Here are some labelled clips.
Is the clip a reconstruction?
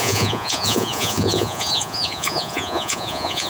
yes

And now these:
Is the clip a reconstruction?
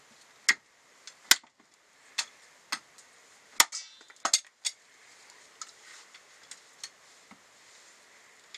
no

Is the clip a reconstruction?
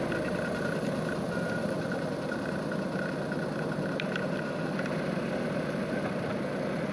no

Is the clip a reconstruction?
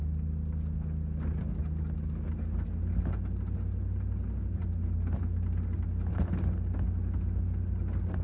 no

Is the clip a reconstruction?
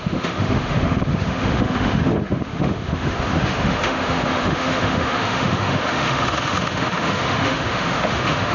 yes